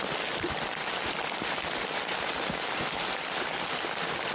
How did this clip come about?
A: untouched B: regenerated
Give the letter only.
A